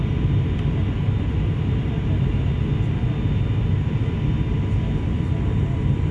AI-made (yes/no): no